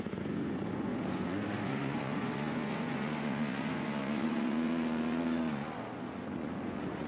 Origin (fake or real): fake